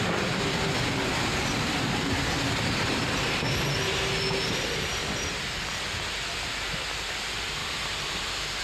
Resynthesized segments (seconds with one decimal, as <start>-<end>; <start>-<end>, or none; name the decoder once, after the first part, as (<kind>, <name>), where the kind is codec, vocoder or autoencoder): 5.0-5.7 (vocoder, BigVGAN v2); 7.6-8.6